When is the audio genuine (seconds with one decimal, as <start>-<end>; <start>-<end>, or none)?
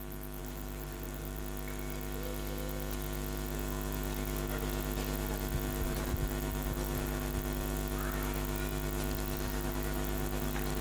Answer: 0.0-0.4; 1.4-10.8